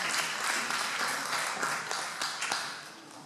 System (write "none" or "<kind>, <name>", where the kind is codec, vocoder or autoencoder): none